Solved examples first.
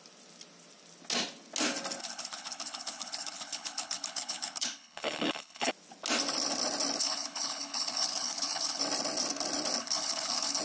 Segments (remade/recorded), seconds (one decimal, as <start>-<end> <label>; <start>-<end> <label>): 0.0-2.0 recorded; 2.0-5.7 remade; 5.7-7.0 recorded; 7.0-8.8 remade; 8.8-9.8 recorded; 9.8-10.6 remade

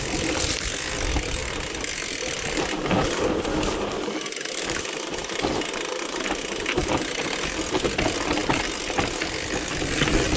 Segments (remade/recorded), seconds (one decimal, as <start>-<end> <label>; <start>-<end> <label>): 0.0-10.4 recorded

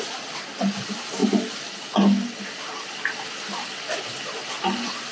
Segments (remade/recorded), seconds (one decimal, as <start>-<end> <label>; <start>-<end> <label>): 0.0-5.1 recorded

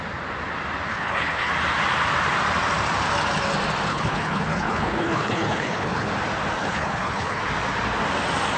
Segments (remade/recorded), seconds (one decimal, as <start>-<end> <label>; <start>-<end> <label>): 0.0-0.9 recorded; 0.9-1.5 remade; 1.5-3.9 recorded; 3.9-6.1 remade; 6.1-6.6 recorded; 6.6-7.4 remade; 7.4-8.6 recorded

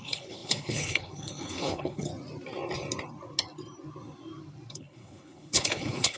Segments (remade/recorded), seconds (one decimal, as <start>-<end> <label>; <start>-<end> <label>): 0.0-2.1 remade; 2.1-4.7 recorded; 4.7-6.2 remade